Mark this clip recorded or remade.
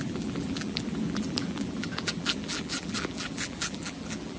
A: remade